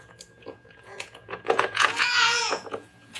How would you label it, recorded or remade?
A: remade